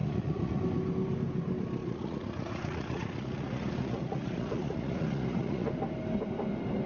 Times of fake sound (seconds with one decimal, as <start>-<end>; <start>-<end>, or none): 0.0-0.6; 1.8-5.7